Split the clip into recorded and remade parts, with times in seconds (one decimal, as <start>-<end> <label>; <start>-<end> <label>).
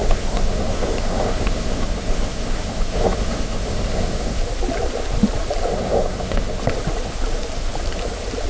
0.0-4.4 remade; 4.4-5.7 recorded; 5.7-6.6 remade; 6.6-8.5 recorded